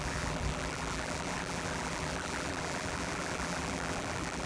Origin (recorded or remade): remade